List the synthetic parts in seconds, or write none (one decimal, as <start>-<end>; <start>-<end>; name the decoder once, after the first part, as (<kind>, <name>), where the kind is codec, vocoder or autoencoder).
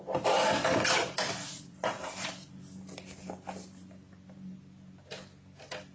1.0-2.6 (vocoder, BigVGAN v2)